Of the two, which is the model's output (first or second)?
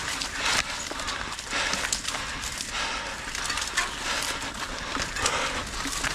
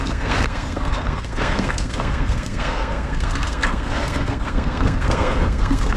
second